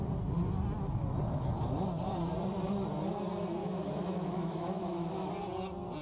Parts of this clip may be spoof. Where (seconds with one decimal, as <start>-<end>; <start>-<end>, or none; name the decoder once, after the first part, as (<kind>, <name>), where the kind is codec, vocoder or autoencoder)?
3.6-5.3 (autoencoder, DAC-VAE)